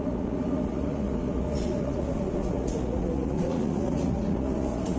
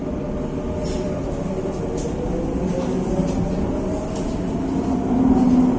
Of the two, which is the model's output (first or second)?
first